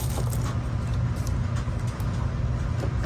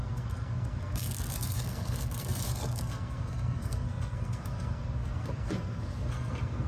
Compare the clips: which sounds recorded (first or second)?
first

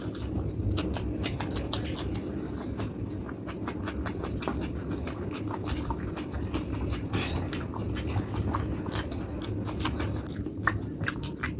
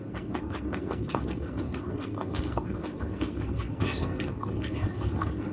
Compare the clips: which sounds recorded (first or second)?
first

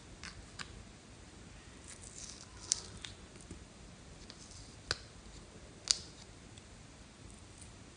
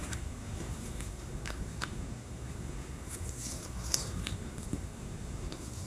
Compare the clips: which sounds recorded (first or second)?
first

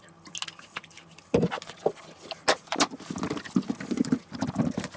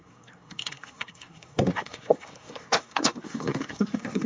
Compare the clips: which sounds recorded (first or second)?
first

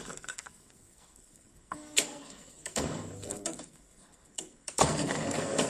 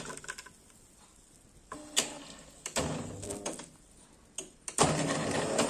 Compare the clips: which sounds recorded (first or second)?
second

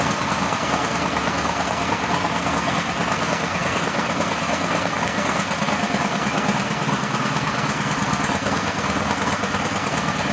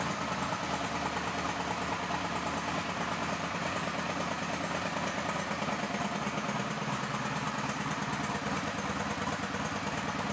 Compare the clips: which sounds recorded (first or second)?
second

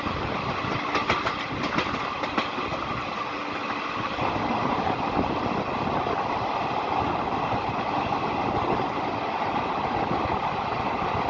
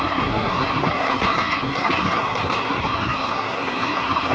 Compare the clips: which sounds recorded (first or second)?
first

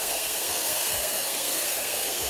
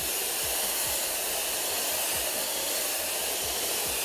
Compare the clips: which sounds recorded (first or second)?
second